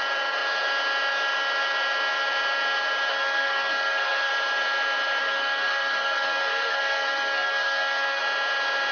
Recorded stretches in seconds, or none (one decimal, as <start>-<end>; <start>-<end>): 0.0-3.1; 4.3-5.2; 8.2-8.9